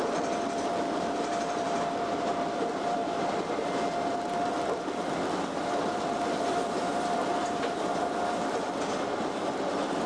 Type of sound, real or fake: fake